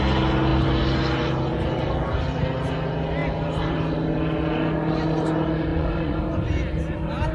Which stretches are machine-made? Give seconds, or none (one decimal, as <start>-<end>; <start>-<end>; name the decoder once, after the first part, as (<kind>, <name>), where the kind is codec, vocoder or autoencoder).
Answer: 5.7-6.2 (vocoder, Vocos)